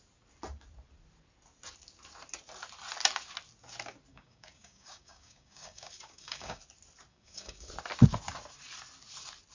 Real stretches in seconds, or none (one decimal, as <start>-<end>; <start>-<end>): 0.0-4.1; 6.6-7.1; 7.7-9.5